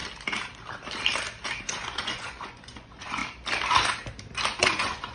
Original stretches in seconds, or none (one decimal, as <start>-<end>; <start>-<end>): 0.0-1.6; 3.2-4.6